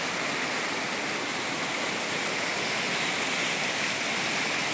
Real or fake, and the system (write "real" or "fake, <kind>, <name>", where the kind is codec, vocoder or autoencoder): real